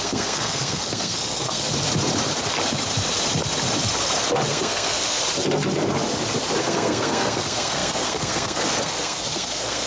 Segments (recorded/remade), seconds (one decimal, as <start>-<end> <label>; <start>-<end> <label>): 0.0-1.7 remade; 1.7-4.5 recorded; 4.5-5.2 remade; 5.2-6.6 recorded; 6.6-9.9 remade